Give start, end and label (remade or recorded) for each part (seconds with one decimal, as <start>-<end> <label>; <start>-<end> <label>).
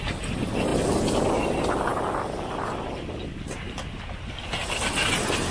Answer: 0.0-5.5 recorded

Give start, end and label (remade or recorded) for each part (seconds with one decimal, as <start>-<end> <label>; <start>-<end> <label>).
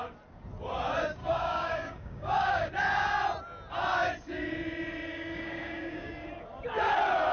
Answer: 0.0-1.2 recorded; 1.2-2.7 remade; 2.7-5.1 recorded; 5.1-6.1 remade; 6.1-7.3 recorded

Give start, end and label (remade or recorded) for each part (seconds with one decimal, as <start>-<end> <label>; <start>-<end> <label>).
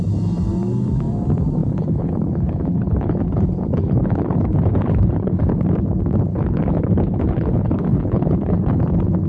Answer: 0.0-1.6 recorded; 1.6-5.6 remade; 5.6-6.3 recorded; 6.3-8.8 remade; 8.8-9.3 recorded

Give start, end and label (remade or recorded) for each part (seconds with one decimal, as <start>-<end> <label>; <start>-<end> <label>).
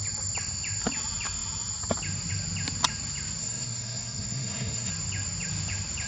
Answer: 0.0-3.4 recorded; 3.4-4.9 remade; 4.9-6.1 recorded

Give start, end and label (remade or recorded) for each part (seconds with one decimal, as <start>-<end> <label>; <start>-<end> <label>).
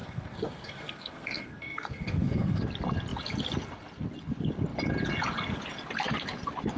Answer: 0.0-2.6 remade; 2.6-6.8 recorded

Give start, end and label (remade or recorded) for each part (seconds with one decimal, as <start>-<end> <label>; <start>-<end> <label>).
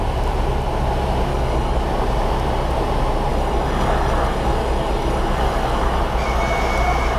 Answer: 0.0-1.3 recorded; 1.3-1.8 remade; 1.8-3.3 recorded; 3.3-6.0 remade; 6.0-7.2 recorded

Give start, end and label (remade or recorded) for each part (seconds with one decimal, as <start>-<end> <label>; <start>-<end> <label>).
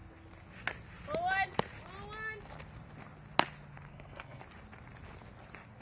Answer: 0.0-3.9 recorded; 3.9-4.4 remade; 4.4-5.8 recorded